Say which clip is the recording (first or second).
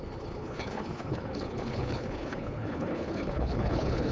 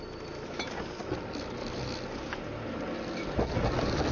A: second